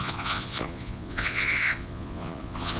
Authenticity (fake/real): fake